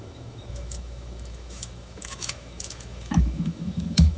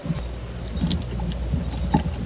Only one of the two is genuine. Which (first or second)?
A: second